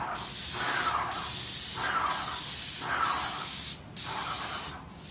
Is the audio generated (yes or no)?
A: no